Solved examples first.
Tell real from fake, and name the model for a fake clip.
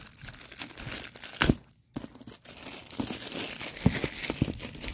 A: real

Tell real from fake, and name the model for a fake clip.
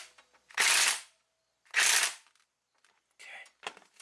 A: real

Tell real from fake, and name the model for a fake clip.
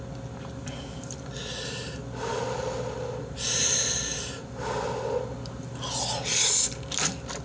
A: real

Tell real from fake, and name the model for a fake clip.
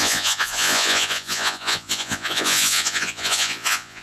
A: fake, vocoder, Vocos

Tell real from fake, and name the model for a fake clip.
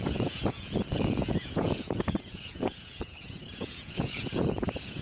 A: fake, vocoder, Vocos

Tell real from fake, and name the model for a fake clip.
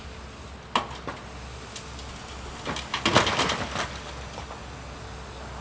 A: real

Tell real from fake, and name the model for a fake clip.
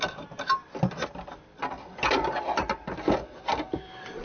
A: real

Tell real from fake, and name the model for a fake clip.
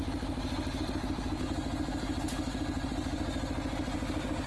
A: real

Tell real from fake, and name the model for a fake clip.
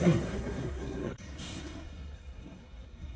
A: fake, codec, SNAC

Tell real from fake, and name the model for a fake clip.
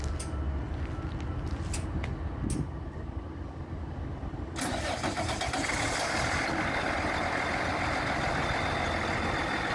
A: real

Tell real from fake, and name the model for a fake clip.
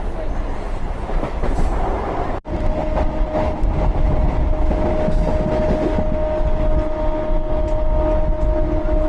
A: real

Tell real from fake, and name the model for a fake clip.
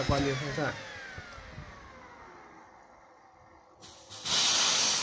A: real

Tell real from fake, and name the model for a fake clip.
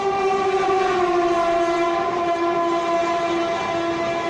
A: real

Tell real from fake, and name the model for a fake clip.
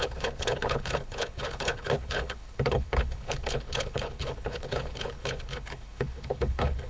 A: fake, codec, HILCodec